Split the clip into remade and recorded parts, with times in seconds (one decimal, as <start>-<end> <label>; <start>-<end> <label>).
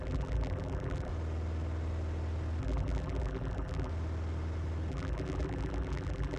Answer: 0.0-1.1 remade; 1.1-2.6 recorded; 2.6-3.9 remade; 3.9-4.9 recorded; 4.9-6.4 remade